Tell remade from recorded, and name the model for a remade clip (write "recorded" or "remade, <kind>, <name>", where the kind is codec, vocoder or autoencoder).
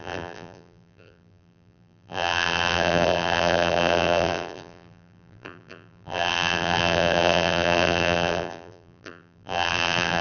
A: remade, vocoder, BigVGAN v2